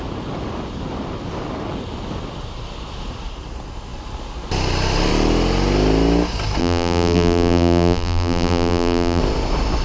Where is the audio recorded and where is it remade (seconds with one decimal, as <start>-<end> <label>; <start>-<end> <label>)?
0.0-6.6 recorded; 6.6-9.2 remade; 9.2-9.8 recorded